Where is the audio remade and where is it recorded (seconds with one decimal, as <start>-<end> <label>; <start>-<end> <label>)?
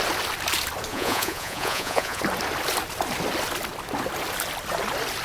0.0-0.9 recorded; 0.9-2.2 remade; 2.2-5.2 recorded